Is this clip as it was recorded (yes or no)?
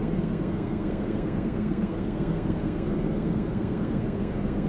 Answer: no